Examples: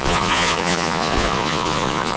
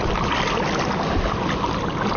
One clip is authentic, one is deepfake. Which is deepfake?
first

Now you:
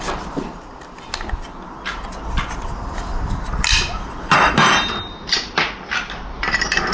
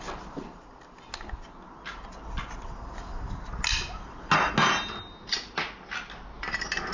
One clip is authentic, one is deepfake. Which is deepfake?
first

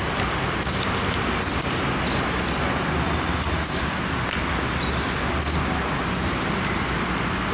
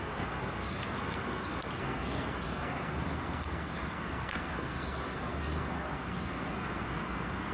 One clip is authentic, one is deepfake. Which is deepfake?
second